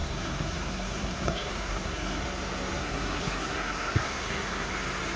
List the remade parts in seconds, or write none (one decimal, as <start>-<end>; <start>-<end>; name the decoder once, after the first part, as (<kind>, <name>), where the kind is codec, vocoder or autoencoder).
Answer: 0.0-2.2 (codec, SNAC); 2.8-4.7